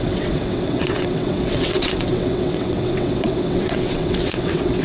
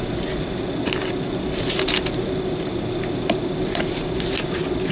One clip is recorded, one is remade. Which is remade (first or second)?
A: first